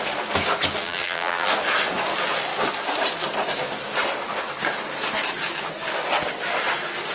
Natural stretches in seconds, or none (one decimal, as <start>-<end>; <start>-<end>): 0.0-0.8; 1.5-7.1

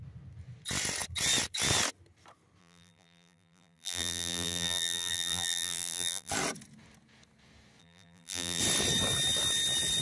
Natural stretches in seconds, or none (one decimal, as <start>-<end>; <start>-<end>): 0.0-2.6; 6.3-7.8; 8.6-10.0